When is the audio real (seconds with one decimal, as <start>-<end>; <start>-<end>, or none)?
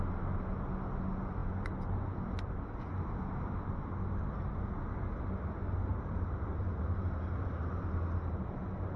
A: 0.0-5.9; 6.8-9.0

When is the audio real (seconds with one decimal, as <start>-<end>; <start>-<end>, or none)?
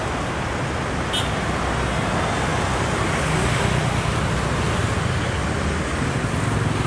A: 0.0-6.9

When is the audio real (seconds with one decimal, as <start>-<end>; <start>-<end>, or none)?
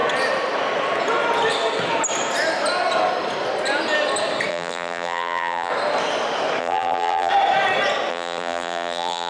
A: 0.0-4.5; 5.7-6.6; 7.3-8.1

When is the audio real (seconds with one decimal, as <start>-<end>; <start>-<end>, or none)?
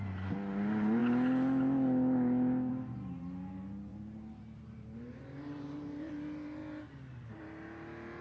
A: 0.0-3.9; 6.1-8.2